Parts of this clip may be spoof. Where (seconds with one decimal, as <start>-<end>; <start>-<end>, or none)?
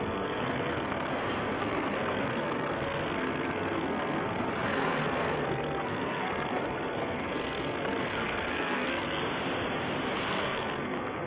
0.0-1.1; 1.6-9.2; 10.3-11.3